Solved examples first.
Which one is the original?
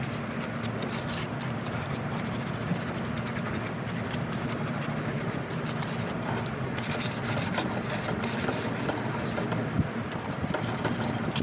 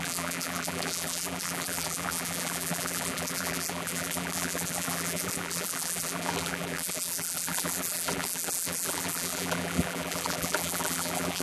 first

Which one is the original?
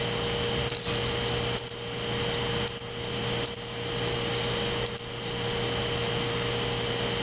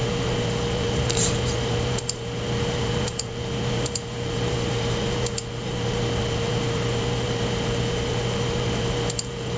first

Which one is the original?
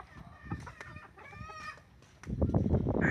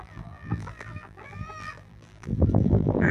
first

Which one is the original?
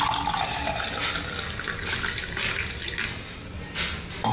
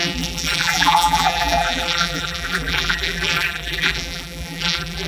first